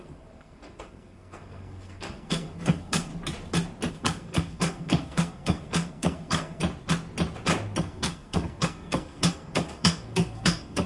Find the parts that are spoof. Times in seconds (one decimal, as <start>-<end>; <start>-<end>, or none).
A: 0.0-3.1; 3.9-6.6; 7.8-10.9